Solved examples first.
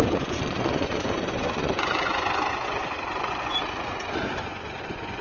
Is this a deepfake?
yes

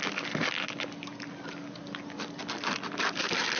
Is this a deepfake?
no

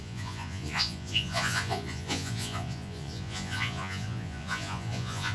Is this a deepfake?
yes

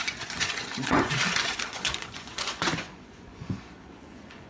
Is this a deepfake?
yes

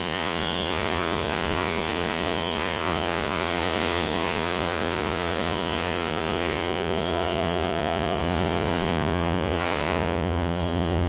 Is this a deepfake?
yes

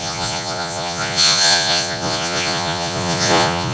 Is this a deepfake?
yes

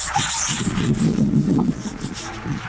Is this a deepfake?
yes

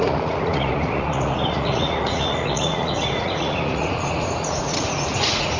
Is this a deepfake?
yes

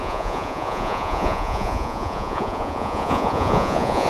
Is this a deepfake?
yes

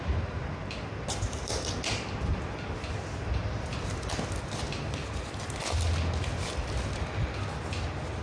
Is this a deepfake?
no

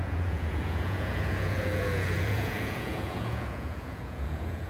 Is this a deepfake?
yes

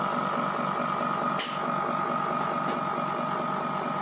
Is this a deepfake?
no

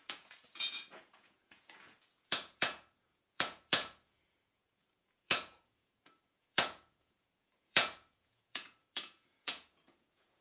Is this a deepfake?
yes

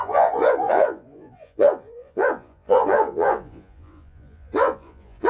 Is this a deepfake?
yes